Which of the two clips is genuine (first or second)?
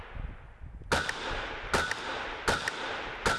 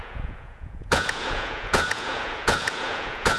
first